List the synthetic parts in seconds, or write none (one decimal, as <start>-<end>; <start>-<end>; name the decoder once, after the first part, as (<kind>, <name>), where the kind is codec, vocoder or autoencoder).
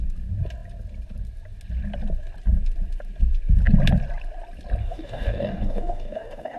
4.8-6.6 (codec, DAC)